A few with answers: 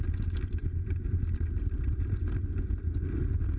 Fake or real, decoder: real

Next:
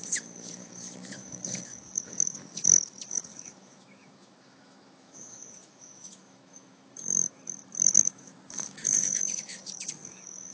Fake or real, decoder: fake, autoencoder, DAC-VAE